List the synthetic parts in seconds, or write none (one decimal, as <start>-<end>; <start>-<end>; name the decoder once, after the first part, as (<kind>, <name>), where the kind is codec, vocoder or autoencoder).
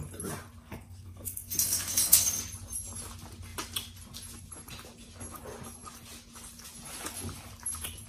0.6-2.4 (codec, SNAC)